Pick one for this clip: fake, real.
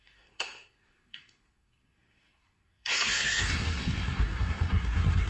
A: fake